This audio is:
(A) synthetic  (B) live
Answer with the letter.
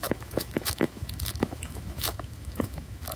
A